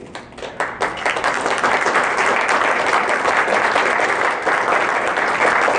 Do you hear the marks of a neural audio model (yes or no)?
no